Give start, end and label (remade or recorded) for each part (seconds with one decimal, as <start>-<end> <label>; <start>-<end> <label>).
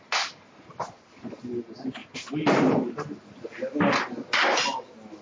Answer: 0.0-5.2 recorded